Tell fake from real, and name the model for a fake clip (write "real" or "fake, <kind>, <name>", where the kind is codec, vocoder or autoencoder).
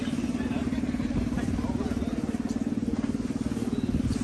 real